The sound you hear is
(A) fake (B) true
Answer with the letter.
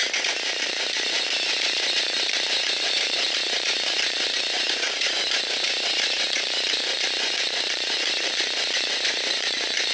A